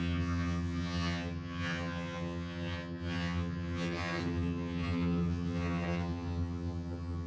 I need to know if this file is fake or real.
fake